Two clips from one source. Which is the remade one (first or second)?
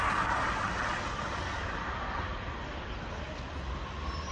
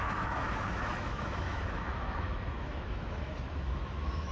second